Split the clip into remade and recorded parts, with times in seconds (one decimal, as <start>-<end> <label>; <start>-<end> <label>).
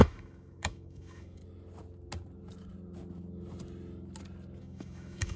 0.0-1.4 remade; 1.4-4.6 recorded; 4.6-5.4 remade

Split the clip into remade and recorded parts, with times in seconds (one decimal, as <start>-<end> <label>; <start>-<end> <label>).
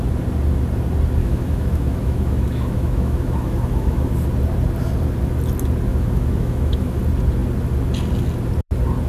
0.0-1.2 recorded; 1.2-4.1 remade; 4.1-5.9 recorded; 5.9-7.0 remade; 7.0-9.1 recorded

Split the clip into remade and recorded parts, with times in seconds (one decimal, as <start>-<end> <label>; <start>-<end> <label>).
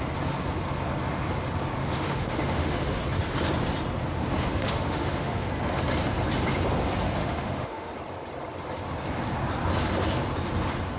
0.0-1.8 recorded; 1.8-3.0 remade; 3.0-4.5 recorded; 4.5-5.5 remade; 5.5-7.2 recorded; 7.2-7.9 remade; 7.9-11.0 recorded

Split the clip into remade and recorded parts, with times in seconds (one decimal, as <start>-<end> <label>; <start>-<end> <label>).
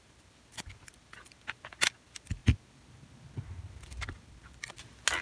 0.0-5.2 recorded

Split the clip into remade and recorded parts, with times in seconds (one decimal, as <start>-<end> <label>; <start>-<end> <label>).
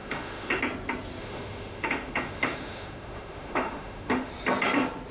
0.0-0.6 remade; 0.6-1.2 recorded; 1.2-4.3 remade; 4.3-5.1 recorded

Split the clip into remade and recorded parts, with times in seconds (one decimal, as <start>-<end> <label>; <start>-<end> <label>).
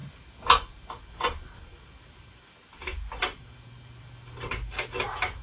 0.0-5.4 recorded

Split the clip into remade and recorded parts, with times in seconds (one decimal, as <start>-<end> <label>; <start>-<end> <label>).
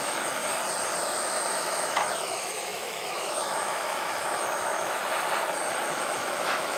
0.0-0.4 remade; 0.4-1.2 recorded; 1.2-5.0 remade; 5.0-5.8 recorded; 5.8-6.8 remade